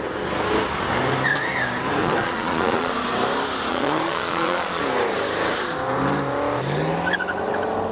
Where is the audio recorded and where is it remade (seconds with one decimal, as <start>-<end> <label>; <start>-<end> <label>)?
0.0-2.0 recorded; 2.0-2.9 remade; 2.9-3.7 recorded; 3.7-4.8 remade; 4.8-7.9 recorded